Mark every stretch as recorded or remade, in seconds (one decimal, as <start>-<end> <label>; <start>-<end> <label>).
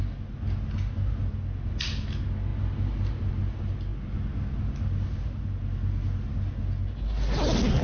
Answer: 0.0-7.8 recorded